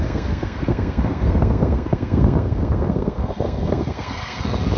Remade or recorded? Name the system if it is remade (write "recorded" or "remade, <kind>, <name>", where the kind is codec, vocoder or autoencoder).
remade, codec, SNAC